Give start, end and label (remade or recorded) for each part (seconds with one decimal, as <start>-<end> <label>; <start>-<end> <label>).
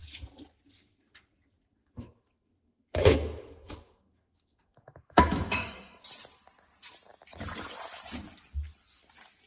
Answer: 0.0-1.8 recorded; 1.8-6.0 remade; 6.0-9.5 recorded